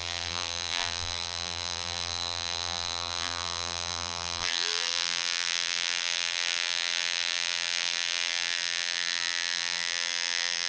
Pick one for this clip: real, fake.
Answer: fake